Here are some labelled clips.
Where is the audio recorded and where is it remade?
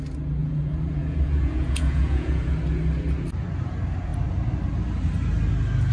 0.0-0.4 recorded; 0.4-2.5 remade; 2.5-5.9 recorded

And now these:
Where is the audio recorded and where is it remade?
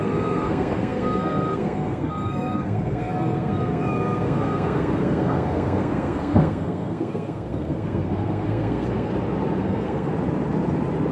0.0-9.1 remade; 9.1-9.6 recorded; 9.6-10.1 remade; 10.1-11.1 recorded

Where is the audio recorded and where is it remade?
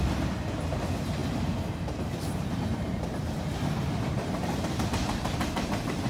0.0-1.2 recorded; 1.2-4.9 remade; 4.9-6.1 recorded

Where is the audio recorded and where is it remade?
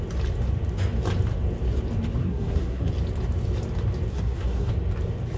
0.0-2.2 recorded; 2.2-2.9 remade; 2.9-4.1 recorded; 4.1-4.7 remade; 4.7-5.4 recorded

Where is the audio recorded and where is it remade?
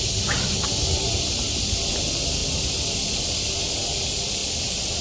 0.0-4.4 recorded; 4.4-5.0 remade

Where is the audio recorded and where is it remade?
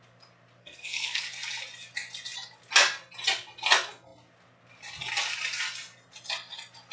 0.0-0.6 recorded; 0.6-1.2 remade; 1.2-6.9 recorded